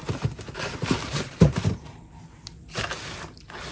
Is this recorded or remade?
recorded